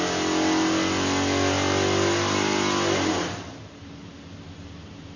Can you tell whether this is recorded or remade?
recorded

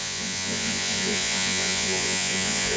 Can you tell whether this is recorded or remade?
remade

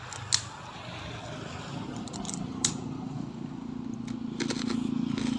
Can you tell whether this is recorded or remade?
recorded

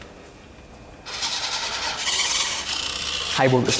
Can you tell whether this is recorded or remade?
recorded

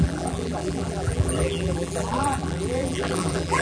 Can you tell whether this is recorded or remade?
remade